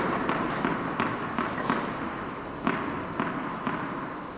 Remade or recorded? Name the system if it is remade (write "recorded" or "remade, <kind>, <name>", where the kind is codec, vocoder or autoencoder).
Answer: recorded